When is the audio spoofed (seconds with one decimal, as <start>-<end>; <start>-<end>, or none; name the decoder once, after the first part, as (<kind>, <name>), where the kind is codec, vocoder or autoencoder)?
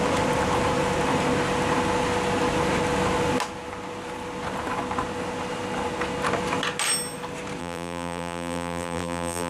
7.6-9.5 (vocoder, BigVGAN v2)